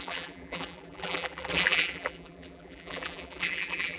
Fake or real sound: fake